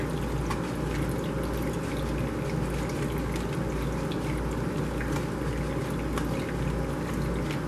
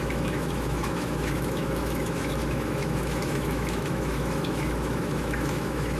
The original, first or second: first